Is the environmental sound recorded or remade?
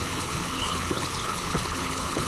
remade